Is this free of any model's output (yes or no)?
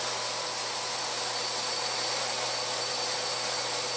yes